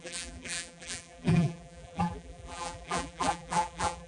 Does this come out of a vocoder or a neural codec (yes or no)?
yes